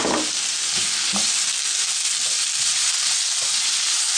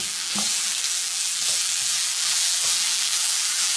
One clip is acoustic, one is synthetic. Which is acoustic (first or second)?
first